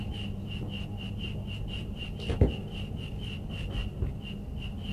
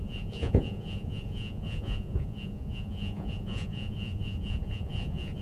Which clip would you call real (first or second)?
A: first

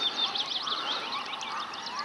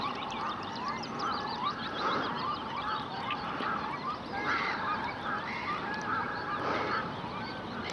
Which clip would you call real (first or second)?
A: first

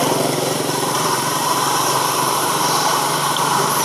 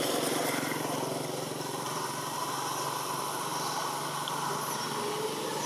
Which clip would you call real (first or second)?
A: second